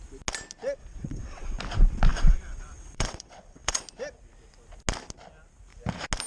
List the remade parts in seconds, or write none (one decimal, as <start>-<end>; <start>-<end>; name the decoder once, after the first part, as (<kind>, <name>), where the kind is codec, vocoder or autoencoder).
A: 0.8-1.6 (vocoder, WaveNeXt); 2.1-3.8